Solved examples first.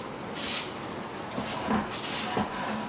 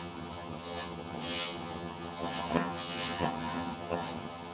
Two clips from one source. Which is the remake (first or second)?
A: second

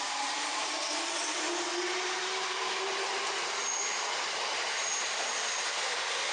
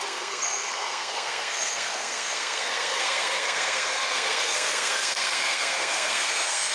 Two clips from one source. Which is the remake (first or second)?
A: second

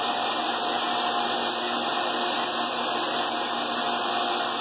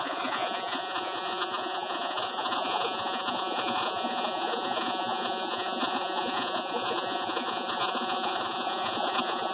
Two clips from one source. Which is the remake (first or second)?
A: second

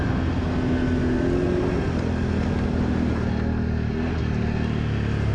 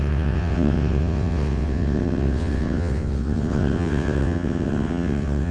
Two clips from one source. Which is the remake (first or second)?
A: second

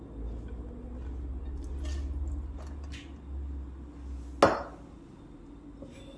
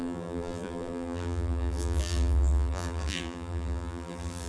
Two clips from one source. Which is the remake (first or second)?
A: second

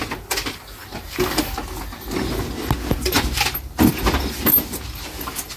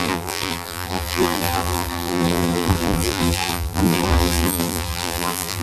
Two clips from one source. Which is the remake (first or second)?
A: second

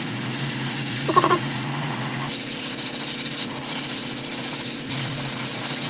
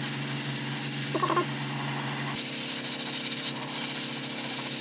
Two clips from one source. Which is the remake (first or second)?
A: first